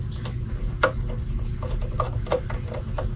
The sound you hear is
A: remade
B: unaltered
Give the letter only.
B